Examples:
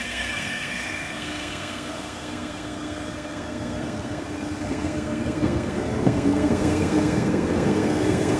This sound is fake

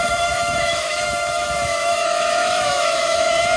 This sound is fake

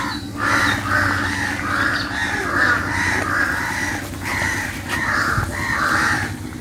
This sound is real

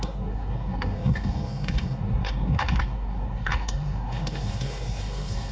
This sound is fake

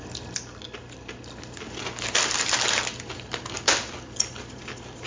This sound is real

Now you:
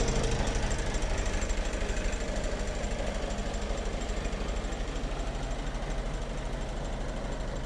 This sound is real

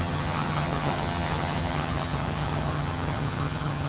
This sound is fake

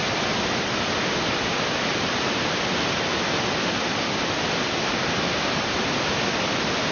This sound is real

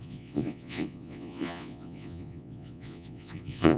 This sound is fake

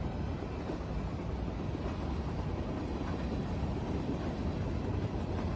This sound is real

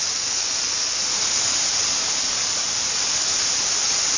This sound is real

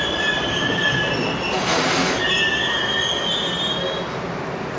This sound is real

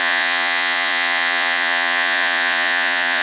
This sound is fake